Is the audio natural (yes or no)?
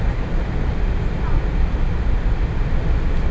yes